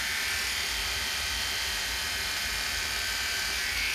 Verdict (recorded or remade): recorded